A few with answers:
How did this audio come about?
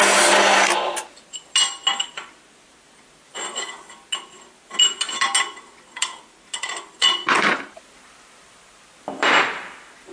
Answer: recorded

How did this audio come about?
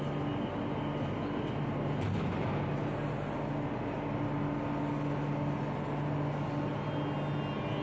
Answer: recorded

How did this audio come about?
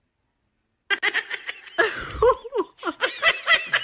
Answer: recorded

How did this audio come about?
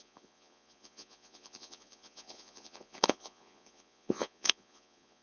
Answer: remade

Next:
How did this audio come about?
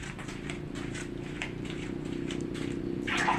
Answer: recorded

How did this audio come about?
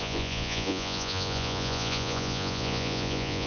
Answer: remade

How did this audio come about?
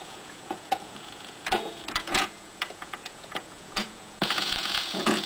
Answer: remade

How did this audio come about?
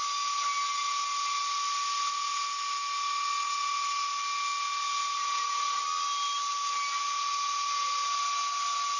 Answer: recorded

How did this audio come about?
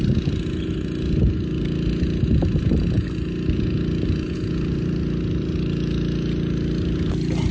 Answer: recorded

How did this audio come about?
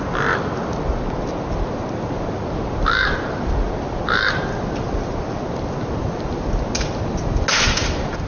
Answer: recorded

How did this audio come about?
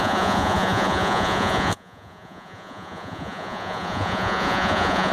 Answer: remade